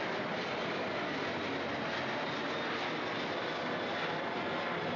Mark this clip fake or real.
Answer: real